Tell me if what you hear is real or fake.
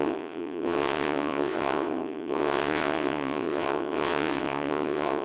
fake